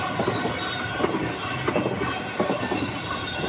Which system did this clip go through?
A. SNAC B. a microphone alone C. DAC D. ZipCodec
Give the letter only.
B